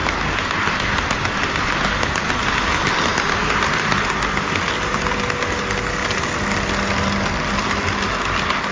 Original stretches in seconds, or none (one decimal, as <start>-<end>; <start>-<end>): 0.0-8.7